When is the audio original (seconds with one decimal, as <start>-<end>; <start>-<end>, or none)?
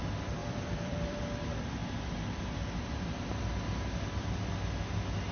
0.0-0.4; 1.2-5.3